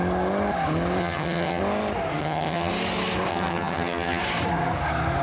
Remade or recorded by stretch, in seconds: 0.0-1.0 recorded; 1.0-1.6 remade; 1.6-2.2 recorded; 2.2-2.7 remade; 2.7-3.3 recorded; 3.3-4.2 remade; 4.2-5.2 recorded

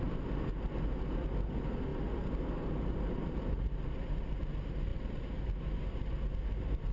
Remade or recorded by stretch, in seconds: 0.0-6.9 recorded

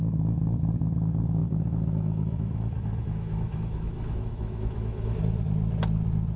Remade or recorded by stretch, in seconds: 0.0-1.4 recorded; 1.4-5.2 remade; 5.2-6.4 recorded

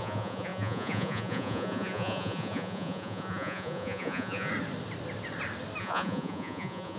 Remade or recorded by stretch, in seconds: 0.0-4.5 remade; 4.5-5.8 recorded; 5.8-7.0 remade

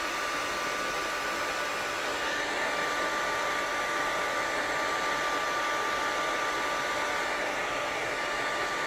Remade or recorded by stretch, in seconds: 0.0-8.9 recorded